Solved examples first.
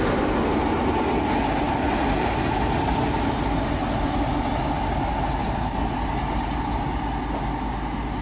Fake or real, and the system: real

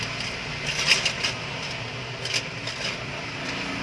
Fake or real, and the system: real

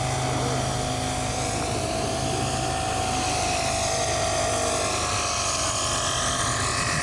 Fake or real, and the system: real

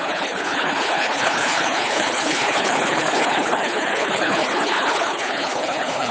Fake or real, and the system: fake, codec, HILCodec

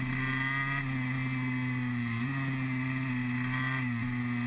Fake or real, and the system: real